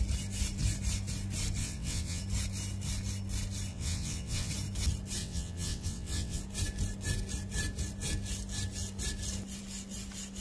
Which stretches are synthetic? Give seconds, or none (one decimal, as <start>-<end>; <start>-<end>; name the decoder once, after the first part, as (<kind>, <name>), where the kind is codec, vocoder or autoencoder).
1.6-2.2 (vocoder, WaveNeXt); 3.7-4.5; 5.2-6.4